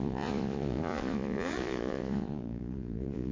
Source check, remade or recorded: remade